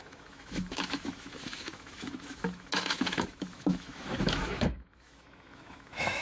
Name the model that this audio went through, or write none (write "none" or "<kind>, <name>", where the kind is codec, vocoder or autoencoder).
autoencoder, DAC-VAE